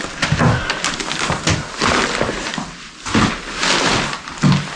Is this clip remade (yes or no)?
no